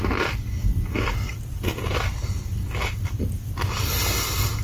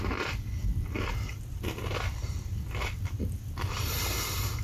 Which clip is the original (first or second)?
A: first